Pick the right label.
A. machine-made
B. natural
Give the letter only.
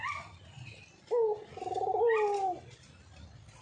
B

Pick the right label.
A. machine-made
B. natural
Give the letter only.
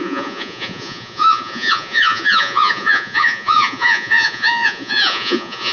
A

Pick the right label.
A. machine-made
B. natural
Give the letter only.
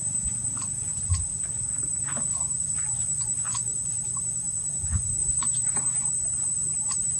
B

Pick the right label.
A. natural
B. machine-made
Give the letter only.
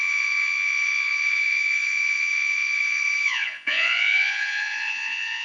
B